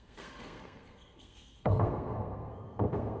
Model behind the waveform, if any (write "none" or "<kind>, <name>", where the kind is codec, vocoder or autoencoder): codec, SNAC